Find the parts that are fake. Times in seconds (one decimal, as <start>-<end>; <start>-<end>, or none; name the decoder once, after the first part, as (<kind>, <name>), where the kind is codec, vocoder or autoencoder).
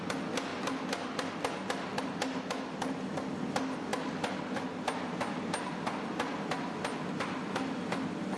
none